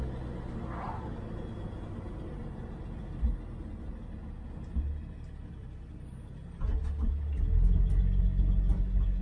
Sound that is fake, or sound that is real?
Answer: real